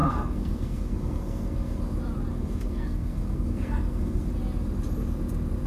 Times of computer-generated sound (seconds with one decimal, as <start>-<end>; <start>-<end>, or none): 0.0-1.8; 2.3-4.3